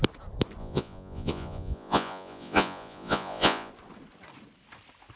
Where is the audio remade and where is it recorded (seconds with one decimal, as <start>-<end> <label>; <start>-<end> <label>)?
0.0-0.6 recorded; 0.6-3.7 remade; 3.7-5.2 recorded